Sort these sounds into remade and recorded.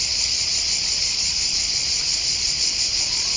remade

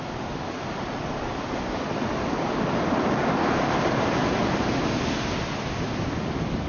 recorded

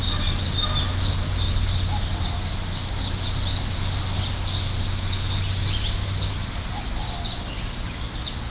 recorded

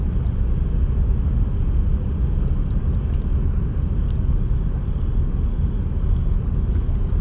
recorded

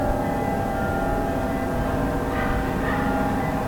recorded